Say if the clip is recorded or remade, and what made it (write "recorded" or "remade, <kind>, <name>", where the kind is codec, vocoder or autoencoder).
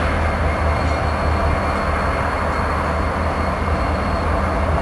recorded